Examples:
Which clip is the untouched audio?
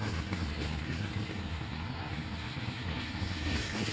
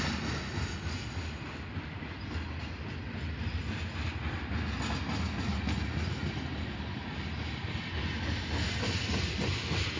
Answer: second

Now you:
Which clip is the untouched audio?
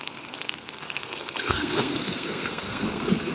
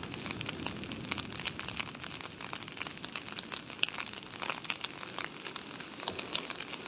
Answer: second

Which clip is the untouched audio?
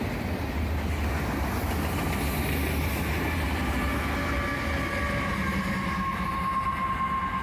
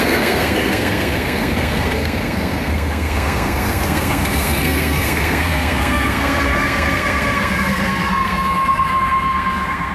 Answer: first